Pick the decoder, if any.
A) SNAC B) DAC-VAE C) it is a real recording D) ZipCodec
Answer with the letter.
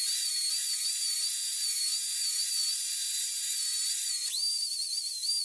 C